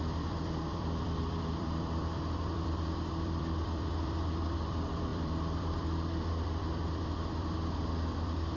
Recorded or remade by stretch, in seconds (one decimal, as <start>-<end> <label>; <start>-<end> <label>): 0.0-8.6 remade